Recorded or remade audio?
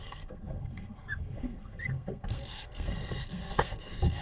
remade